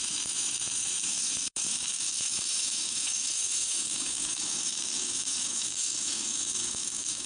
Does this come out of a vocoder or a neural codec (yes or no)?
yes